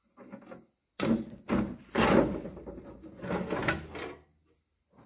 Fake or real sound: real